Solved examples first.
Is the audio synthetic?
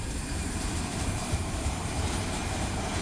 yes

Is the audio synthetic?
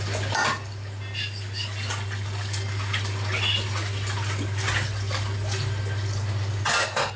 no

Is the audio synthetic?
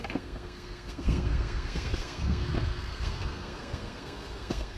yes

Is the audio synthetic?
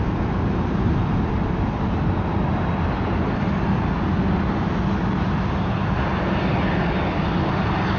no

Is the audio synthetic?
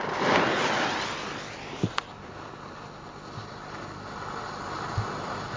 no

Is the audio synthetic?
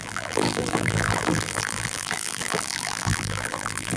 yes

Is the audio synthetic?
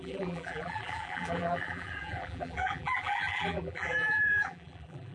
yes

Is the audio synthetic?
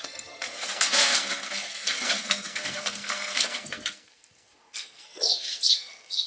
yes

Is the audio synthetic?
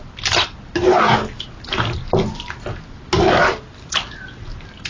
no